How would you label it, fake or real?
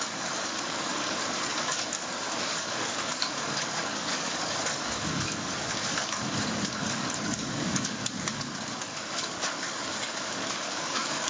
fake